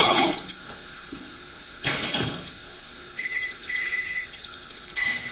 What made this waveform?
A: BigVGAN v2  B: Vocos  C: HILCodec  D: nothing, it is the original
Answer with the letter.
C